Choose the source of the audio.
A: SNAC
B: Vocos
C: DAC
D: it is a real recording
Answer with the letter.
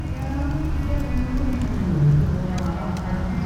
D